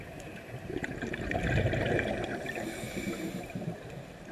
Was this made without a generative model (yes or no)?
no